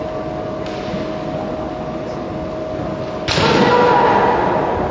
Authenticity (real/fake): real